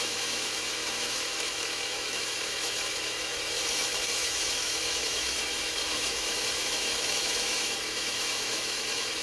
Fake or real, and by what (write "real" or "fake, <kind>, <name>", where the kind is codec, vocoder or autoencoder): fake, autoencoder, DAC-VAE